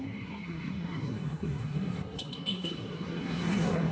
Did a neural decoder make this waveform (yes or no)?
yes